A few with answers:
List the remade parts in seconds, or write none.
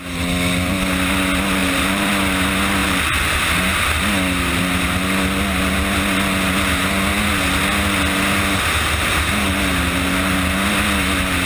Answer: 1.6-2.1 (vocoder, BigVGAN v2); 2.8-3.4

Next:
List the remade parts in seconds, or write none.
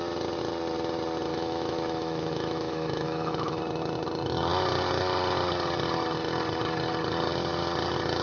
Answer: 1.3-3.6 (autoencoder, DAC-VAE)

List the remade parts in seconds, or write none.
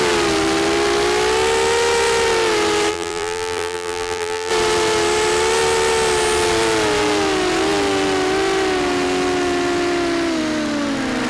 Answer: 2.9-4.5 (vocoder, BigVGAN v2)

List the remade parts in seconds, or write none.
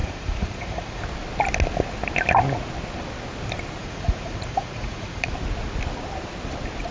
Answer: 0.0-1.0 (vocoder, Vocos); 3.8-5.3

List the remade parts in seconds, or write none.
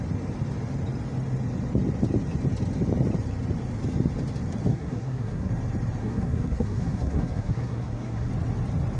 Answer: 4.7-5.5 (codec, SNAC); 6.0-8.3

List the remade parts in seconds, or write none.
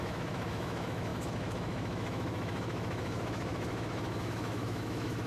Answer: 0.0-5.3 (autoencoder, DAC-VAE)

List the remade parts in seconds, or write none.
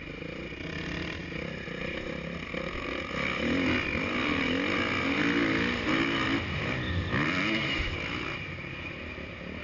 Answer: none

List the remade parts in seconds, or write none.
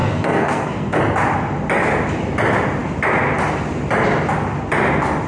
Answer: 0.0-1.0 (codec, SNAC)